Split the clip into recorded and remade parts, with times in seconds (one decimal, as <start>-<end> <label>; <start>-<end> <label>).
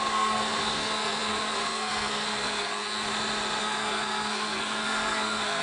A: 0.0-2.7 remade; 2.7-3.6 recorded; 3.6-5.6 remade